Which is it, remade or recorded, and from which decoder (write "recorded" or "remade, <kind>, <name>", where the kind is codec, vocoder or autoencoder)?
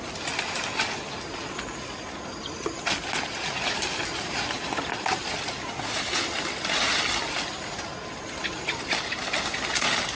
recorded